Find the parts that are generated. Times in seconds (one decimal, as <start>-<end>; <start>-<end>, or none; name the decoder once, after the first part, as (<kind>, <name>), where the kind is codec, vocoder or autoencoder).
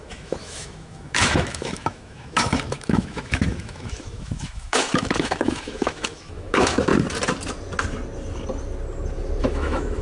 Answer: 0.0-6.9 (autoencoder, DAC-VAE); 9.4-10.0